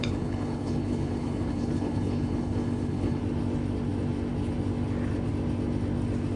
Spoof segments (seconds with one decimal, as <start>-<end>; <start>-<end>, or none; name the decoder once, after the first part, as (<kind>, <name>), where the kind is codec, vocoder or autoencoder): 0.0-3.2 (codec, HILCodec)